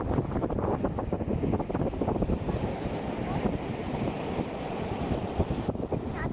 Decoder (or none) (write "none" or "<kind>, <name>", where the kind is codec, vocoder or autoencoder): none